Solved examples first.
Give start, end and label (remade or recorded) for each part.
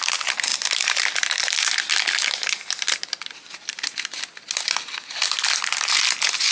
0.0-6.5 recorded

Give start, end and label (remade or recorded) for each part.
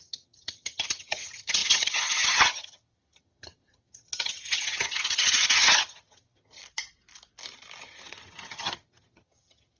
0.0-6.6 remade; 6.6-7.8 recorded; 7.8-9.8 remade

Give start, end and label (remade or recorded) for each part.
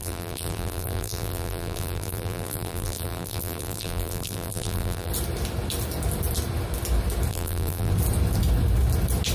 0.0-5.1 remade; 5.1-7.3 recorded; 7.3-7.9 remade; 7.9-9.3 recorded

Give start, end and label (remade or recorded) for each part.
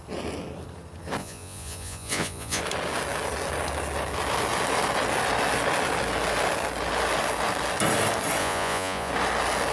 0.0-1.2 recorded; 1.2-2.6 remade; 2.6-8.4 recorded; 8.4-9.1 remade; 9.1-9.7 recorded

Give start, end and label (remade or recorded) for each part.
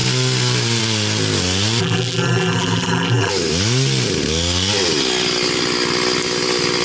0.0-1.8 recorded; 1.8-3.3 remade; 3.3-6.8 recorded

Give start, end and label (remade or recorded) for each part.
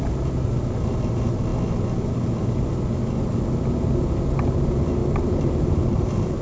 0.0-6.4 recorded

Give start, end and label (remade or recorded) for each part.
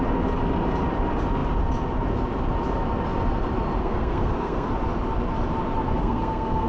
0.0-3.8 recorded; 3.8-4.7 remade; 4.7-6.0 recorded; 6.0-6.7 remade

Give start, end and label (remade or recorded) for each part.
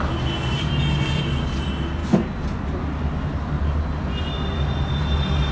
0.0-5.5 recorded